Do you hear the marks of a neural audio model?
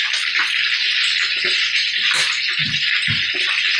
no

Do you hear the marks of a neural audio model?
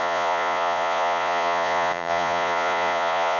yes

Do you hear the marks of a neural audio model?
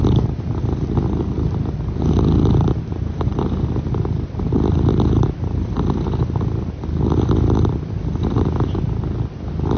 no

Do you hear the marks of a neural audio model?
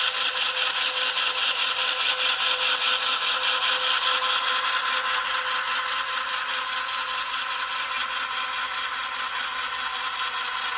no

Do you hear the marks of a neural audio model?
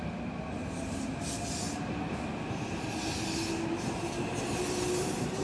no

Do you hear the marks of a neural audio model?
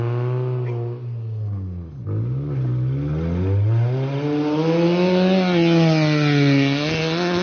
no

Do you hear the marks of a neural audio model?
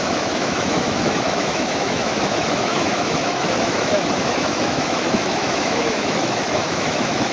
yes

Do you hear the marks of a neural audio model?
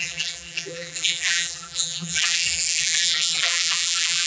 yes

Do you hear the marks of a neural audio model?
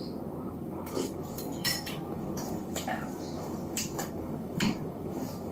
yes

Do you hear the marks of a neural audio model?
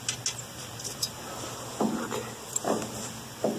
no